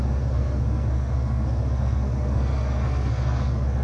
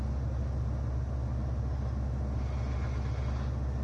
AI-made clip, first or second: first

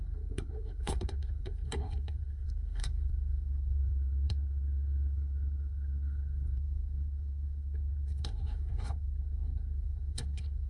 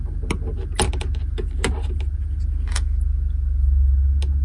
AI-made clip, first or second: first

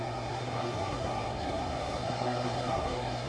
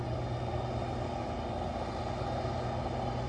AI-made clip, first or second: first